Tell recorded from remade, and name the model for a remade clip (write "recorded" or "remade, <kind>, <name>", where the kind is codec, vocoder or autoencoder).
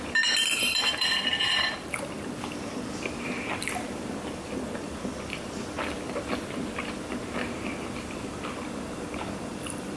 remade, vocoder, BigVGAN v2